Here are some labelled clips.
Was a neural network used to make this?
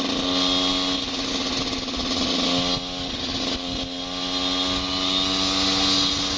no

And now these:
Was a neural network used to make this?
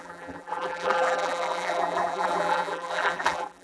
yes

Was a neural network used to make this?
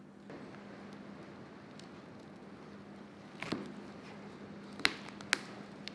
no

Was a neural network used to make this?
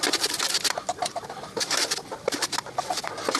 yes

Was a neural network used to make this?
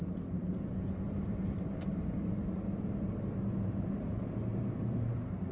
yes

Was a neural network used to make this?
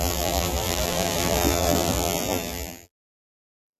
yes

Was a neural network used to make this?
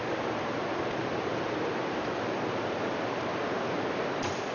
yes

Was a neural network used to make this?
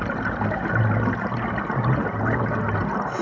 no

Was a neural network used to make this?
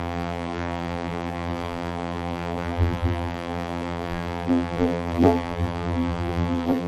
yes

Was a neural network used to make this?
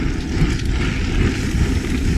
no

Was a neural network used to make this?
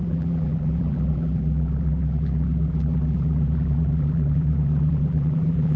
yes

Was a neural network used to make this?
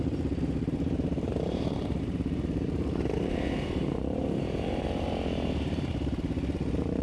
yes